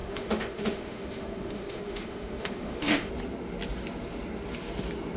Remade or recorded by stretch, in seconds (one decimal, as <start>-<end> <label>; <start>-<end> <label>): 0.0-3.1 remade; 3.1-5.2 recorded